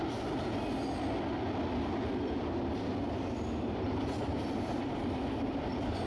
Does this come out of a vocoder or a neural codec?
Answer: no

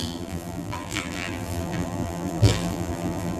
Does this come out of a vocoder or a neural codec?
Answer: yes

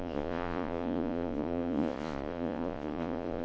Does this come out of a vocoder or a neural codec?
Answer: yes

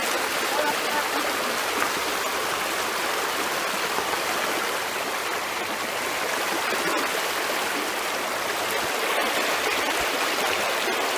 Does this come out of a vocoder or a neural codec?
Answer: no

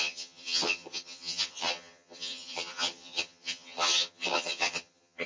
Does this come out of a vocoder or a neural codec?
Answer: yes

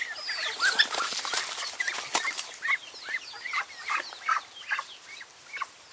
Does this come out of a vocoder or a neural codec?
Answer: no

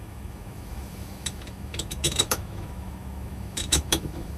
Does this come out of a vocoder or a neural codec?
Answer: yes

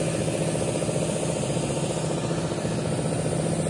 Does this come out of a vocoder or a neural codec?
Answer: no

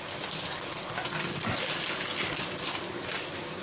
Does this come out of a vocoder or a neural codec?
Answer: no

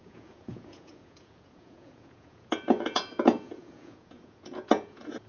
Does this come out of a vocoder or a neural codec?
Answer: yes